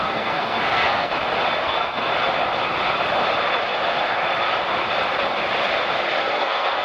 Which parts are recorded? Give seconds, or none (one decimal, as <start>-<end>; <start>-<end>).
1.1-1.6; 2.1-6.2